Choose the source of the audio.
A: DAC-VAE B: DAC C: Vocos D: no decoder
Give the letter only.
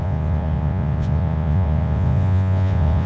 C